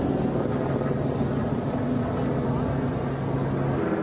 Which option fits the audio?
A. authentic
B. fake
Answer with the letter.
A